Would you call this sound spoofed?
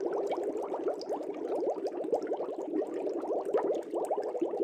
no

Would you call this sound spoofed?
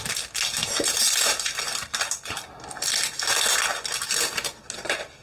no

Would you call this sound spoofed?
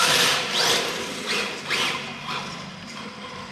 no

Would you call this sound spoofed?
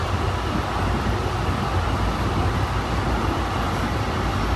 no